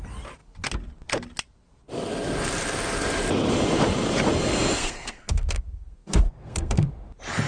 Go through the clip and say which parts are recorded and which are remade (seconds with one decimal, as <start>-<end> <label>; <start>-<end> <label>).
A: 0.0-4.8 recorded; 4.8-6.9 remade; 6.9-7.5 recorded